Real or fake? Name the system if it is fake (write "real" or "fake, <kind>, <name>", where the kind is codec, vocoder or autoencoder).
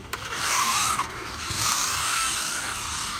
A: fake, codec, DAC